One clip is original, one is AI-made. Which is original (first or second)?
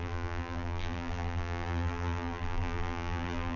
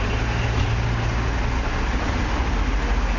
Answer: second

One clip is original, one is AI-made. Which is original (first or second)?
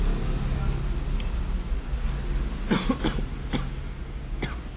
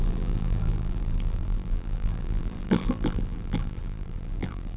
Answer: first